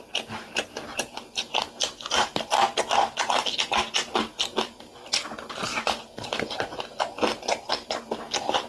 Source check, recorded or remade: recorded